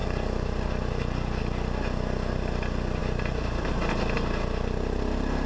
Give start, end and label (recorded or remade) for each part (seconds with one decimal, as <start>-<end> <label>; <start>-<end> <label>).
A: 0.0-3.0 recorded; 3.0-3.7 remade; 3.7-5.5 recorded